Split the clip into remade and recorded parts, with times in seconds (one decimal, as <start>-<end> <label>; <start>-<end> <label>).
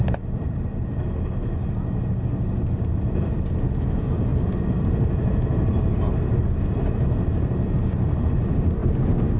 0.0-9.4 recorded